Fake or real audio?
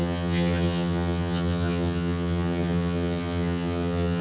fake